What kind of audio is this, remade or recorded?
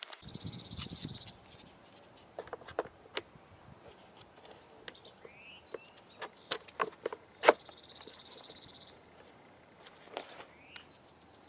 recorded